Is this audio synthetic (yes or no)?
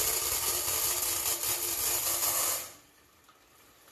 yes